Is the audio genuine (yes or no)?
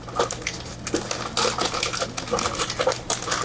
yes